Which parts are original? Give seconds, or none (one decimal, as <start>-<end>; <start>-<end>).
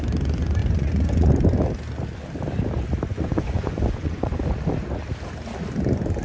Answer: 0.0-0.6; 1.3-3.1; 4.4-6.2